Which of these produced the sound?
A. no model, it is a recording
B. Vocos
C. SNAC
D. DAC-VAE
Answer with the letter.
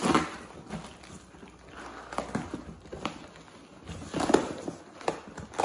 A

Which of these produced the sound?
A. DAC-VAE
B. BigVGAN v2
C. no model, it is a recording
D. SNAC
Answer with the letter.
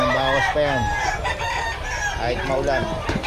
C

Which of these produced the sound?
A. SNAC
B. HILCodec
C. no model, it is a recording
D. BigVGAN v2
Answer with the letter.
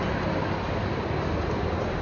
C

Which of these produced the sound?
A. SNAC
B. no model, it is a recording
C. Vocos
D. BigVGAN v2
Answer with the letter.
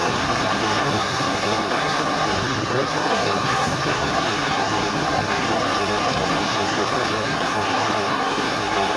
A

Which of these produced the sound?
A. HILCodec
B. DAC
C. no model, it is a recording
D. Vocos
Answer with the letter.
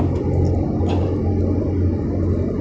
C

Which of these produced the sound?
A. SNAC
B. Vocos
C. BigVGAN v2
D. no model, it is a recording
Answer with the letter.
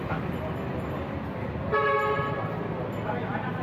D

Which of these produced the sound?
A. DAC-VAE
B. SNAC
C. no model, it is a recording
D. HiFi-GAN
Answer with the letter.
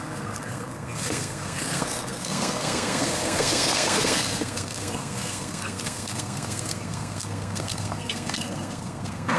B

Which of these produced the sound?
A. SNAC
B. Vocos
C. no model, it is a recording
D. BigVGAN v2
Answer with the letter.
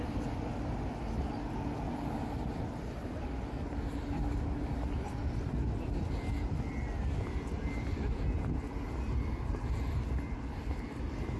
C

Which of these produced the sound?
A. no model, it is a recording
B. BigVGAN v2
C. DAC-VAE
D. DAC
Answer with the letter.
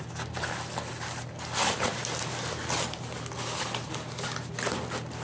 A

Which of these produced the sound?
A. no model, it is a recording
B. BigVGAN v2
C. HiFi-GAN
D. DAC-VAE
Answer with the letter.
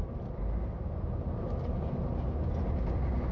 A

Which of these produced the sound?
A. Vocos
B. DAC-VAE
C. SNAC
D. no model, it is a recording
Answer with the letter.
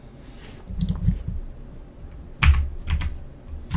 D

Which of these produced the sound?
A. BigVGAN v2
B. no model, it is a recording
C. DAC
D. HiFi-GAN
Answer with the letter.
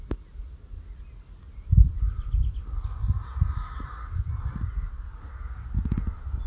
B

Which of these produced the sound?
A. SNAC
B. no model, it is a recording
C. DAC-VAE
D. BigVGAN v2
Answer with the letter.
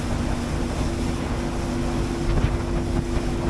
B